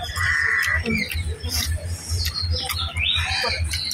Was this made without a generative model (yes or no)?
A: yes